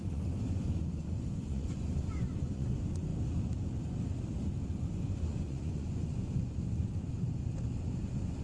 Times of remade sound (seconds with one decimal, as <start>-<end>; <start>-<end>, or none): 0.0-3.1; 4.9-6.8; 8.0-8.4